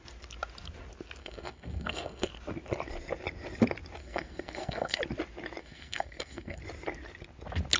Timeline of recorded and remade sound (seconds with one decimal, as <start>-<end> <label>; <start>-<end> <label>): 0.0-1.2 recorded; 1.2-2.3 remade; 2.3-4.0 recorded; 4.0-5.0 remade; 5.0-5.6 recorded; 5.6-6.6 remade; 6.6-7.8 recorded

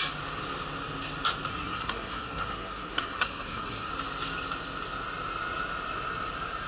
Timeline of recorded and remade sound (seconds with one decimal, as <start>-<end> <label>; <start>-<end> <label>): 0.0-1.5 recorded; 1.5-3.9 remade; 3.9-6.7 recorded

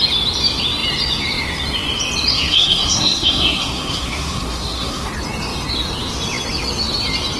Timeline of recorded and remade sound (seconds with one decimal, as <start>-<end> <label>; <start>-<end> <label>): 0.0-2.3 recorded; 2.3-5.1 remade; 5.1-7.4 recorded

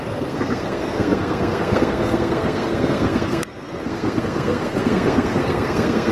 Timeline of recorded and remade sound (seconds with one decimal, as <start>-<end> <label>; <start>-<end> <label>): 0.0-6.1 remade

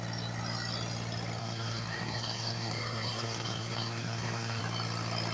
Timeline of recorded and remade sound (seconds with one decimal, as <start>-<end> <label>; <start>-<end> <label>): 0.0-1.4 recorded; 1.4-4.6 remade; 4.6-5.3 recorded

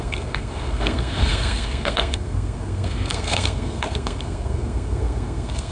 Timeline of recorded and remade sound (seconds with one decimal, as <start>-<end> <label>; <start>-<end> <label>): 0.0-5.7 remade